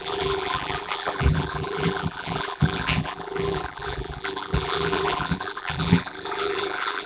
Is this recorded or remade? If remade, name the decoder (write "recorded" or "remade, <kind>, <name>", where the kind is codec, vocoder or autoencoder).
remade, vocoder, BigVGAN v2